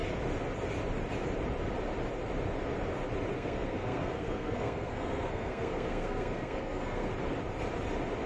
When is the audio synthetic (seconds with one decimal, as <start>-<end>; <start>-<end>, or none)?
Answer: 3.3-7.1